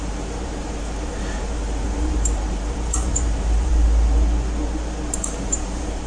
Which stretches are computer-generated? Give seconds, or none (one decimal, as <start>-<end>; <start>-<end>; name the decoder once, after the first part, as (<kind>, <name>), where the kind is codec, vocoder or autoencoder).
0.0-3.7 (vocoder, BigVGAN v2); 5.2-6.1